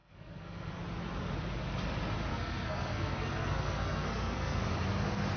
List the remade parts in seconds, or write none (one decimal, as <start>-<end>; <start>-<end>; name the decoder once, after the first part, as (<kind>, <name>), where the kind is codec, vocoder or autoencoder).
0.0-0.8 (codec, SNAC); 2.3-4.6